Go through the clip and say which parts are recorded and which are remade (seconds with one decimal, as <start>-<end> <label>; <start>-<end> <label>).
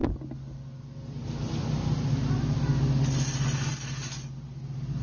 0.0-5.0 recorded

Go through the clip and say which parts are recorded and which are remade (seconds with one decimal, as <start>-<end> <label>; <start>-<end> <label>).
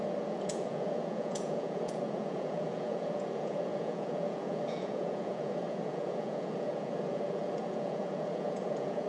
0.0-9.1 remade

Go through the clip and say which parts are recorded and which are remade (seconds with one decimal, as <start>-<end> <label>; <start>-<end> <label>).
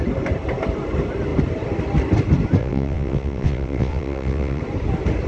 0.0-2.6 recorded; 2.6-4.6 remade; 4.6-5.3 recorded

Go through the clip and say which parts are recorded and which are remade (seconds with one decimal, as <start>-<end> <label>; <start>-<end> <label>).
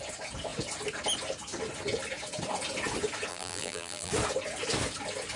0.0-3.3 recorded; 3.3-4.1 remade; 4.1-5.4 recorded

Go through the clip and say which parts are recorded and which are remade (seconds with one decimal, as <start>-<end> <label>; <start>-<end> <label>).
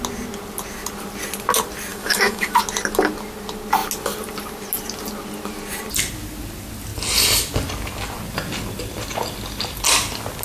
0.0-1.9 recorded; 1.9-2.6 remade; 2.6-10.4 recorded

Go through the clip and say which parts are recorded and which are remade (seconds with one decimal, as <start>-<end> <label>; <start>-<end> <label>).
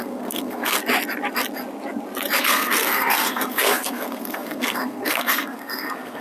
0.0-0.8 remade; 0.8-2.4 recorded; 2.4-6.2 remade